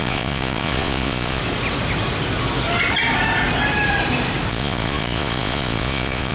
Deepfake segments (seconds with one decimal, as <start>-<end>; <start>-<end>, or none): 0.0-1.4; 4.5-6.3